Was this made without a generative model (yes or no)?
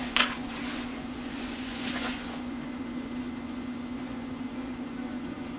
no